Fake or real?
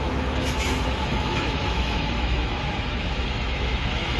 fake